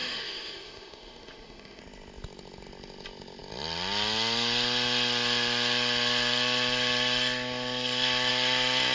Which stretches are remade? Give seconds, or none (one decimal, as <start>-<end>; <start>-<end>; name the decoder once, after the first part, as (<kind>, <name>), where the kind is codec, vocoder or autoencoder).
0.0-1.8 (autoencoder, DAC-VAE)